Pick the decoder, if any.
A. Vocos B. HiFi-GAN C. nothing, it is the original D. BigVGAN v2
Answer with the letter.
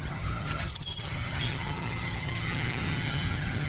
B